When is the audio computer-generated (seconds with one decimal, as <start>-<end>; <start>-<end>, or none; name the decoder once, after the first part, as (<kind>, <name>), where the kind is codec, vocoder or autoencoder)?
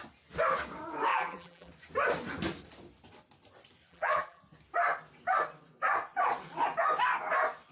1.1-1.7 (vocoder, BigVGAN v2); 3.9-4.4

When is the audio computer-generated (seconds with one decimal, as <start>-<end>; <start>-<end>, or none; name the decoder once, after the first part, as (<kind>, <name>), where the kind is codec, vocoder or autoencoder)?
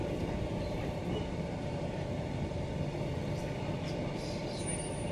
0.0-2.7 (vocoder, BigVGAN v2); 3.6-4.4